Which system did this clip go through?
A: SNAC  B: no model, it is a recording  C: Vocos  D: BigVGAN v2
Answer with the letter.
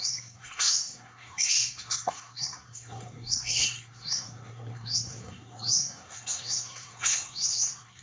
A